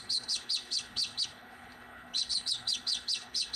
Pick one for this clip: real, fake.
fake